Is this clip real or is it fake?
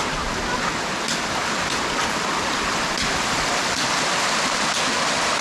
real